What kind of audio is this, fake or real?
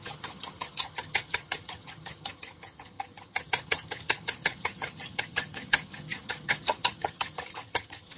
fake